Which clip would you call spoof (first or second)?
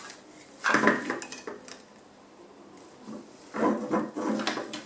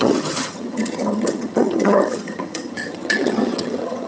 second